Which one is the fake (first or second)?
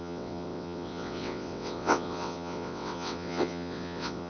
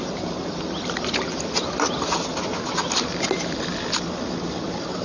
first